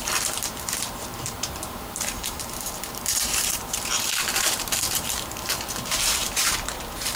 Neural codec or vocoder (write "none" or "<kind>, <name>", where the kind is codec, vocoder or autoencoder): vocoder, BigVGAN v2